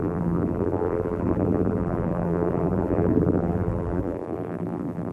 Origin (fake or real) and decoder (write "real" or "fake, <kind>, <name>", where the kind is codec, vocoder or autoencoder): fake, vocoder, BigVGAN v2